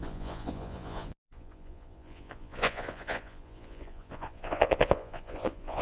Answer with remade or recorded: remade